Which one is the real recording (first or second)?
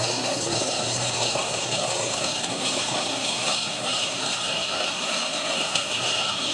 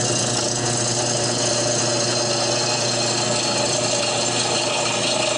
second